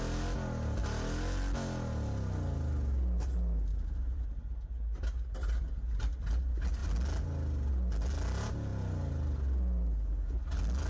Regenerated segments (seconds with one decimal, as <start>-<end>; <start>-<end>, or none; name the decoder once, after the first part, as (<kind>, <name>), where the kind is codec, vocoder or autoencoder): 3.7-4.4 (vocoder, BigVGAN v2)